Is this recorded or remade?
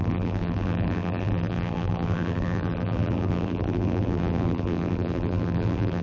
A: remade